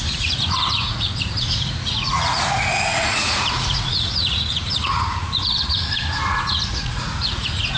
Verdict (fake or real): fake